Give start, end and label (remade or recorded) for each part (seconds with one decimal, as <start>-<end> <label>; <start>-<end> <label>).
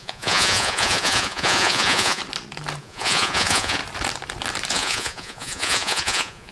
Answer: 0.0-2.2 remade; 2.2-2.8 recorded; 2.8-3.8 remade; 3.8-4.7 recorded; 4.7-6.5 remade